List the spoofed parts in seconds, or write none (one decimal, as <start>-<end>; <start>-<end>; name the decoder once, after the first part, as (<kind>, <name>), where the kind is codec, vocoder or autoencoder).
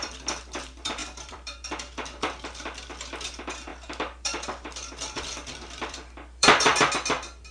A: 0.0-6.7 (vocoder, BigVGAN v2)